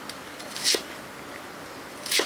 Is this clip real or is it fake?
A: real